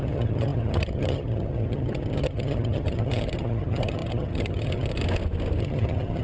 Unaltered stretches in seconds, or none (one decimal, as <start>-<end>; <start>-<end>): 5.0-5.6